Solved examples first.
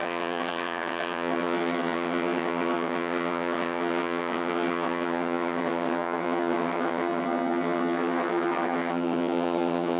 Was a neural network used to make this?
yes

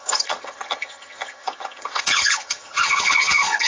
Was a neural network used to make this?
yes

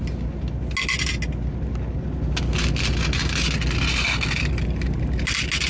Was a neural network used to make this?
no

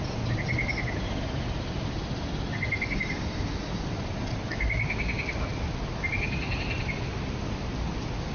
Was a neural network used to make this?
no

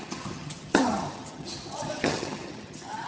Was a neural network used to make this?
yes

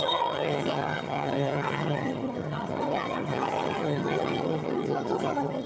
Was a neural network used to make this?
yes